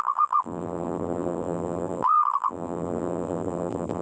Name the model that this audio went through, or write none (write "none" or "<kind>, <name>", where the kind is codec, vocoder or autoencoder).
vocoder, BigVGAN v2